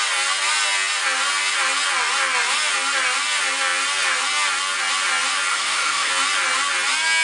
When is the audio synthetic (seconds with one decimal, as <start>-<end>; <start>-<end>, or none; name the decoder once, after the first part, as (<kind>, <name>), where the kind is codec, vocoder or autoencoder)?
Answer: 5.5-6.1 (autoencoder, DAC-VAE)